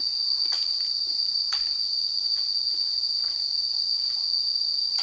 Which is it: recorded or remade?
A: recorded